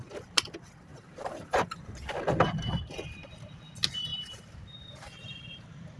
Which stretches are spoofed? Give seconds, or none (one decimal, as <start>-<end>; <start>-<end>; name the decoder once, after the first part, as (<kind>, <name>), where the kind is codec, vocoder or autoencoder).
0.9-1.8 (vocoder, BigVGAN v2); 4.1-5.3

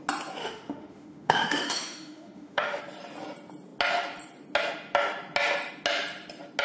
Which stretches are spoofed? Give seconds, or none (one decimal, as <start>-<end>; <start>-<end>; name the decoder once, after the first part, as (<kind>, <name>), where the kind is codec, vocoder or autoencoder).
0.4-2.8 (autoencoder, DAC-VAE)

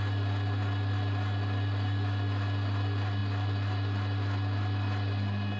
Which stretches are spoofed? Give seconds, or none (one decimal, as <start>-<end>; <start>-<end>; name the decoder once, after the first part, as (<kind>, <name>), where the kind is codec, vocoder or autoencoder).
none

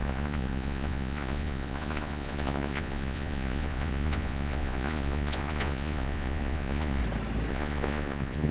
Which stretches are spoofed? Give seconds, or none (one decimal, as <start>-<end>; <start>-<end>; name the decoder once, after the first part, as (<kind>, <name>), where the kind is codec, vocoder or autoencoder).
0.0-7.0 (vocoder, Vocos); 7.5-8.5

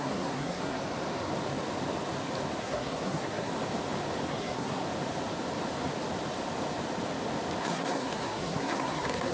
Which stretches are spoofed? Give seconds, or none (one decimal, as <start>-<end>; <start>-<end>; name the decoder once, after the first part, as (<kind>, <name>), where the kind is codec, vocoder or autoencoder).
0.0-0.8 (codec, SNAC); 2.6-3.5; 4.3-4.8; 7.6-9.3

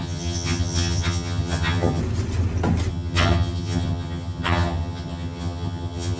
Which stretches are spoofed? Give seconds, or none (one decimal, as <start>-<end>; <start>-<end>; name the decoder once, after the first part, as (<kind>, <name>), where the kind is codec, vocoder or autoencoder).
0.0-2.0 (vocoder, HiFi-GAN); 2.9-6.2

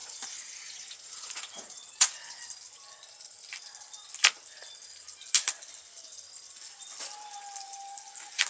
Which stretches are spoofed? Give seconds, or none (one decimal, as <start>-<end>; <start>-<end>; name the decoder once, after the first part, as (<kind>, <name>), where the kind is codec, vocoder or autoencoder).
0.0-2.4 (vocoder, Vocos)

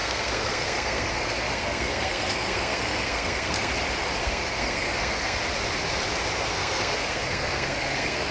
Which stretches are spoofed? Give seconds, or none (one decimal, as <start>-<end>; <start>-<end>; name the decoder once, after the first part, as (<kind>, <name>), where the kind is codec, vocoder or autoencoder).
0.0-3.7 (codec, SNAC); 4.2-5.4; 6.5-8.3